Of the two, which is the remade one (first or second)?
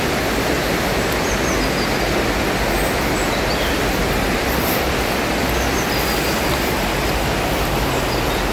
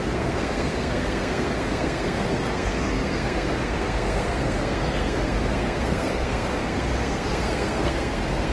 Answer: second